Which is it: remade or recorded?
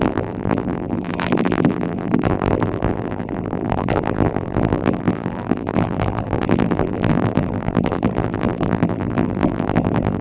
remade